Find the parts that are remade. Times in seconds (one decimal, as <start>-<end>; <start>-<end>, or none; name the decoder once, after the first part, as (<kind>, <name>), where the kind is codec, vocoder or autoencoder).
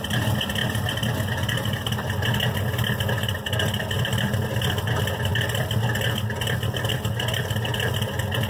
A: none